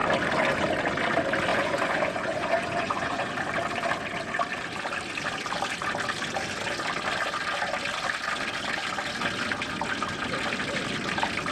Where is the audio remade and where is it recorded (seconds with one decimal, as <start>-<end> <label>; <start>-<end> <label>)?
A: 0.0-1.5 recorded; 1.5-3.3 remade; 3.3-11.5 recorded